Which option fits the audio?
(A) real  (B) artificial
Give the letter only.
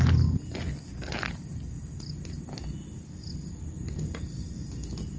A